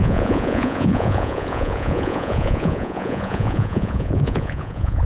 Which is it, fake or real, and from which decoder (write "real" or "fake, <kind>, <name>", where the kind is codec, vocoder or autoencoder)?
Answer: fake, vocoder, Vocos